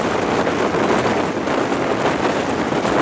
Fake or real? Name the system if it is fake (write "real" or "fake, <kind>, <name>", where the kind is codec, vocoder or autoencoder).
real